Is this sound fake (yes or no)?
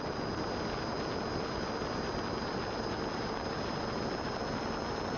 no